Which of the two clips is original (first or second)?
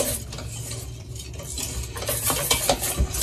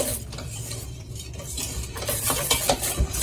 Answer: first